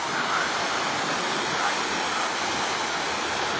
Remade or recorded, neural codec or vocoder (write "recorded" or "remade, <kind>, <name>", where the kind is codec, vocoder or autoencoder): recorded